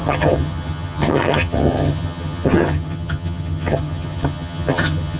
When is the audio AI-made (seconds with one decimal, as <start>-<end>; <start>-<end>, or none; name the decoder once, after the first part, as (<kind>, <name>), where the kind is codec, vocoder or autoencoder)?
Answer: 0.0-5.2 (vocoder, HiFi-GAN)